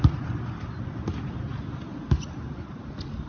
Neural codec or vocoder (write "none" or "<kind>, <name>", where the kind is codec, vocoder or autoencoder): none